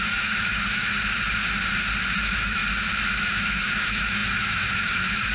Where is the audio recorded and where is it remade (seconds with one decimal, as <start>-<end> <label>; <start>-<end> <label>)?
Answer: 0.0-0.9 remade; 0.9-2.2 recorded; 2.2-2.6 remade; 2.6-3.2 recorded; 3.2-5.3 remade